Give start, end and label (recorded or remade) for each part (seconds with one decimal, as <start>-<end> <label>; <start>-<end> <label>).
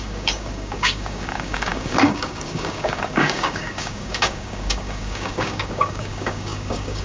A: 0.0-7.0 remade